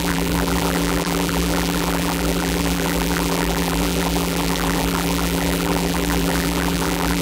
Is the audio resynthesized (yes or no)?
yes